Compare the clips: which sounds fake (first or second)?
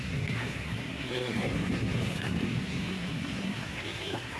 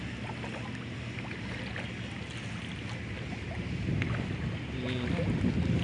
first